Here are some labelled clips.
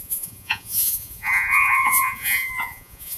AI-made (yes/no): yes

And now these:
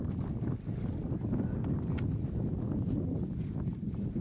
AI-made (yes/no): no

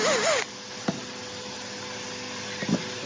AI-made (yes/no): no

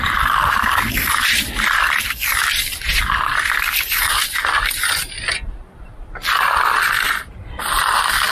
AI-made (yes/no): no